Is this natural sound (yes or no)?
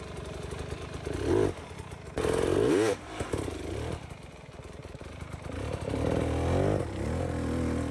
yes